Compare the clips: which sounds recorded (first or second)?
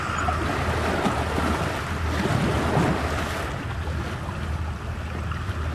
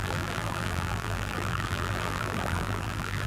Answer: first